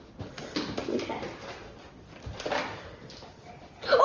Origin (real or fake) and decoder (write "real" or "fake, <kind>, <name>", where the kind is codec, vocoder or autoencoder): real